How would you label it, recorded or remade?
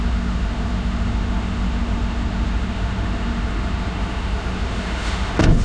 remade